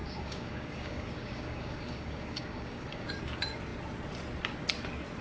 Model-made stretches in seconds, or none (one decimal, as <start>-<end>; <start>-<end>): 0.0-3.1